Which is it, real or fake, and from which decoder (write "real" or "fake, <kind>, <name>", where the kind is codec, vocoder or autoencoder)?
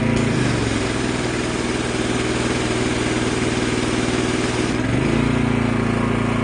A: real